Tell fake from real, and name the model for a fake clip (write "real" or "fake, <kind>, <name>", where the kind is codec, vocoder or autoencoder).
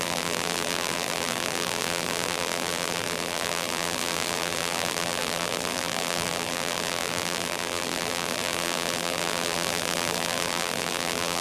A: fake, vocoder, BigVGAN v2